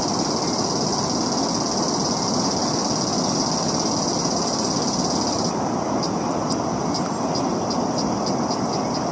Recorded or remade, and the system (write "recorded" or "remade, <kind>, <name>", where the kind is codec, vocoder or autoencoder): recorded